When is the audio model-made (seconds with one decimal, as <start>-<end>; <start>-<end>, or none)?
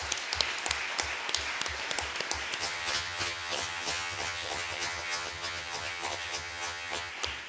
2.6-7.1